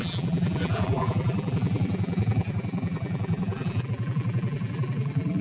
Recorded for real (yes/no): no